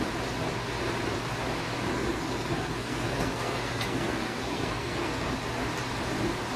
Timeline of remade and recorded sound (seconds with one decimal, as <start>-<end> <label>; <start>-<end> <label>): 0.0-1.9 recorded; 1.9-5.3 remade; 5.3-6.6 recorded